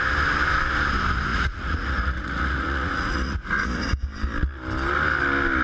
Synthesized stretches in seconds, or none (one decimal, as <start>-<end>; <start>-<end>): 1.3-4.0